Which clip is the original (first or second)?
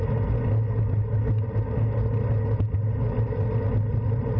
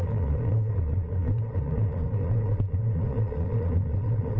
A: first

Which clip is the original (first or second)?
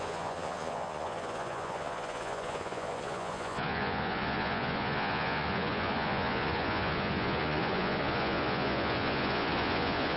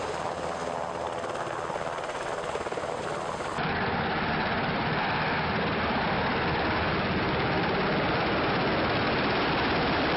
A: second